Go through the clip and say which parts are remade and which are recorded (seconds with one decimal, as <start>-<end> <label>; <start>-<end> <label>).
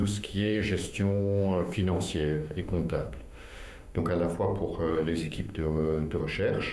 0.0-4.0 remade; 4.0-4.9 recorded; 4.9-6.2 remade; 6.2-6.7 recorded